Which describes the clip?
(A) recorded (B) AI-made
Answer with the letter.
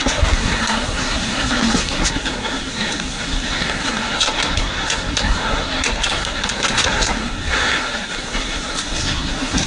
B